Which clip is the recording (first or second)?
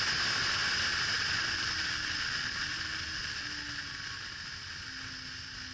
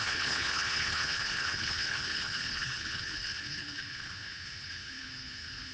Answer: first